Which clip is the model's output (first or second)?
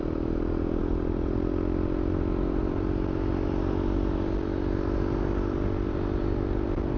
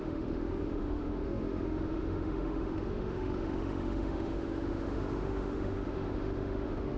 second